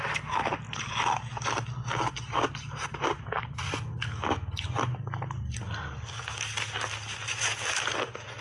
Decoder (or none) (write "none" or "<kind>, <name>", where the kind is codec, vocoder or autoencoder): none